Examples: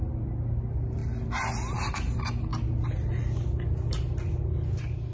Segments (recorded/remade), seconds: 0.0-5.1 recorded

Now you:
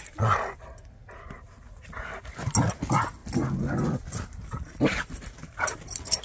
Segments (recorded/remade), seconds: 0.0-6.2 recorded